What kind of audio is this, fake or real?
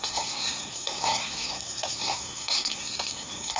fake